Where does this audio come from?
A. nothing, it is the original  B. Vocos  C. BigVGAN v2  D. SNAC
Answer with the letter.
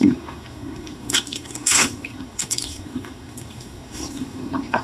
D